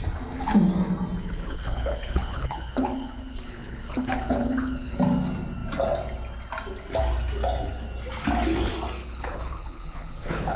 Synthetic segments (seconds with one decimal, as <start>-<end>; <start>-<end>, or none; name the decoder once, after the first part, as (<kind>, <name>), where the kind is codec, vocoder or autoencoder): 1.2-5.0 (codec, HILCodec); 9.0-10.6